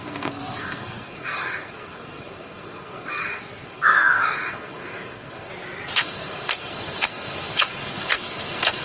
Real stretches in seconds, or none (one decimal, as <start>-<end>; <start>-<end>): 5.5-6.0

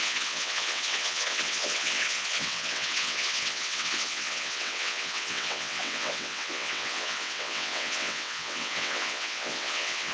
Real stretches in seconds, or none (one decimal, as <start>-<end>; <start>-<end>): none

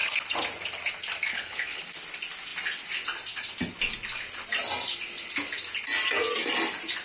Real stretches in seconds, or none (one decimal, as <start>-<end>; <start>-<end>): 0.0-1.3; 1.8-7.0

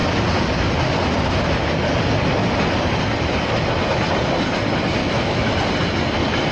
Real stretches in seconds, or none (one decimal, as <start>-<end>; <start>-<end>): 0.0-5.0; 5.5-6.5

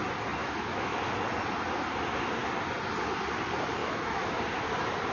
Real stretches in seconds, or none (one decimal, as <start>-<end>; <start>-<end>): 0.0-0.4; 1.1-3.8; 4.4-5.1